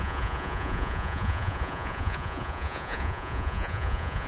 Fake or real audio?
fake